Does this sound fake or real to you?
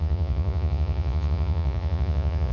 fake